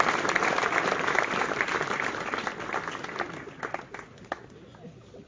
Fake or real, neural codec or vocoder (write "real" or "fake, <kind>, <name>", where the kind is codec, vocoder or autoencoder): real